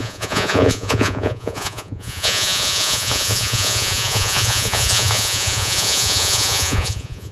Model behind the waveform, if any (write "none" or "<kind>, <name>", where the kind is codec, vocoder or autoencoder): vocoder, Vocos